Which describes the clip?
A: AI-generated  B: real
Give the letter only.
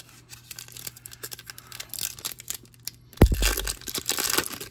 B